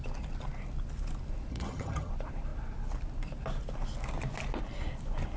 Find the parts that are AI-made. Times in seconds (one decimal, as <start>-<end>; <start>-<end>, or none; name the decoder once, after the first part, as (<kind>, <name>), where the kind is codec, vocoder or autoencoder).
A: 1.5-2.1 (vocoder, HiFi-GAN)